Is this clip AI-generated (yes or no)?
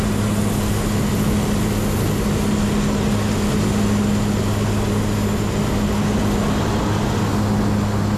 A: no